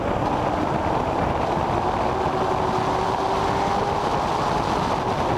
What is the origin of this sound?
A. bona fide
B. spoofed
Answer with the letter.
A